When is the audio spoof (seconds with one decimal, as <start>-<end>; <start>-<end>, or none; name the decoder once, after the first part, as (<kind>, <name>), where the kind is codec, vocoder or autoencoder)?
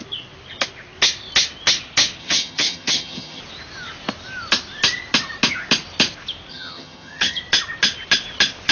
2.2-3.4 (vocoder, HiFi-GAN); 6.5-7.4